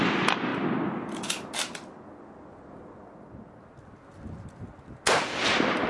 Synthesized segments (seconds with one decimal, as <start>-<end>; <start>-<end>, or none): none